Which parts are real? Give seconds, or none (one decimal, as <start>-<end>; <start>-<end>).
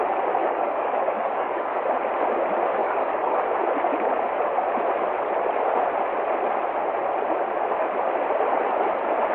0.0-0.4; 1.8-2.8; 3.4-9.3